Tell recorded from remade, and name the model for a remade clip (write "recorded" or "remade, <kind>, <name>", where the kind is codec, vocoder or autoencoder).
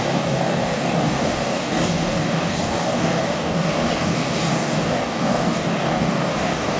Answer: remade, codec, DAC